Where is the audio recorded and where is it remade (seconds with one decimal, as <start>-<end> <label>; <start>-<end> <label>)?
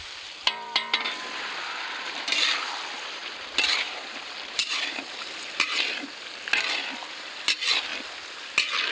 0.0-7.9 remade; 7.9-8.9 recorded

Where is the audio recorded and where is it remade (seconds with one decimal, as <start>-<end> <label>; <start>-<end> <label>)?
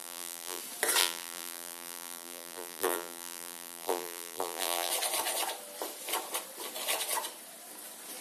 0.0-0.6 remade; 0.6-1.0 recorded; 1.0-4.9 remade; 4.9-8.2 recorded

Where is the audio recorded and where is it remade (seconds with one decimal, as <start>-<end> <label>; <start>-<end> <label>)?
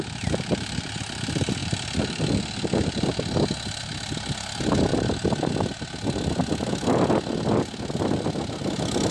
0.0-9.1 recorded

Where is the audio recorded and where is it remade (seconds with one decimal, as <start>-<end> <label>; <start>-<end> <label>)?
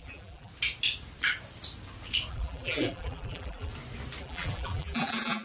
0.0-0.5 remade; 0.5-2.3 recorded; 2.3-3.7 remade; 3.7-4.2 recorded; 4.2-5.4 remade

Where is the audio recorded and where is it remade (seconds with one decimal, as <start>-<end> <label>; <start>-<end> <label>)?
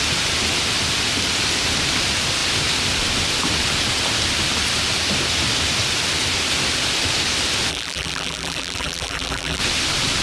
0.0-7.7 recorded; 7.7-9.6 remade; 9.6-10.2 recorded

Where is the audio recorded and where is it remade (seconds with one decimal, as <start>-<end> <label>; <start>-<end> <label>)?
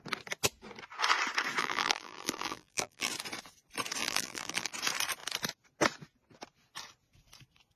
0.0-1.6 recorded; 1.6-3.1 remade; 3.1-4.0 recorded; 4.0-4.7 remade; 4.7-7.8 recorded